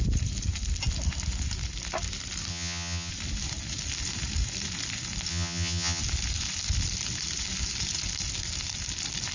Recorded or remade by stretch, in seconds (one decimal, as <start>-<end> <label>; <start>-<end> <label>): 0.0-2.5 recorded; 2.5-3.1 remade; 3.1-5.3 recorded; 5.3-6.0 remade; 6.0-9.3 recorded